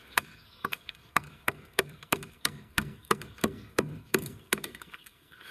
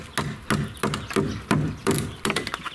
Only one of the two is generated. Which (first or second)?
first